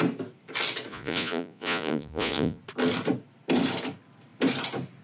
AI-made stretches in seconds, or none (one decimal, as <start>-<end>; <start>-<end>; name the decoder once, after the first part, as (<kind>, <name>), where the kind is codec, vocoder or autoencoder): 0.9-2.6 (vocoder, Vocos)